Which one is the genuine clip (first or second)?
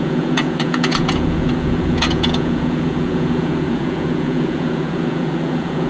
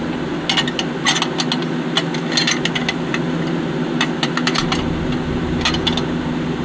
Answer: second